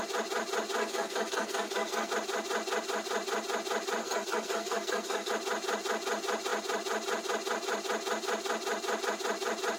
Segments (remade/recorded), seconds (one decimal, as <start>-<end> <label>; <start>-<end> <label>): 0.0-0.8 recorded; 0.8-2.1 remade; 2.1-4.0 recorded; 4.0-5.3 remade; 5.3-9.8 recorded